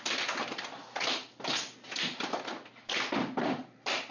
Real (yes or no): yes